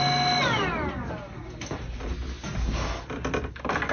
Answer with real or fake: real